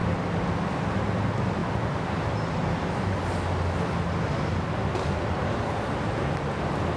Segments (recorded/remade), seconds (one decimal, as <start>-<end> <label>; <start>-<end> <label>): 0.0-0.8 remade; 0.8-1.6 recorded; 1.6-2.5 remade; 2.5-7.0 recorded